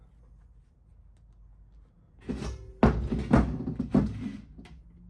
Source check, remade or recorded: recorded